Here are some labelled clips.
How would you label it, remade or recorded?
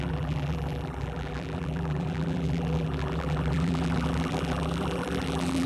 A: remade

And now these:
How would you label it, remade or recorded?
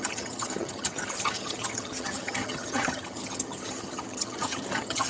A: remade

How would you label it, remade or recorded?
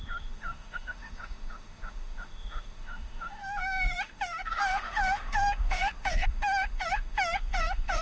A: remade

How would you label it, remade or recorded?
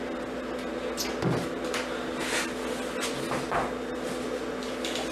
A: recorded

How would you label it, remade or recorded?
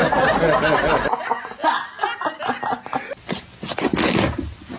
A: recorded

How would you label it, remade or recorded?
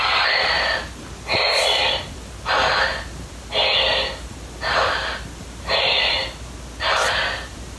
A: recorded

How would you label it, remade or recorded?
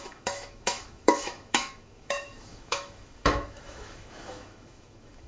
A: remade